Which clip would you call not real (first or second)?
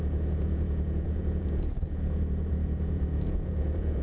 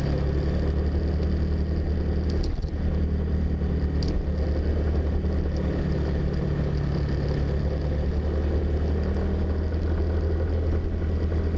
first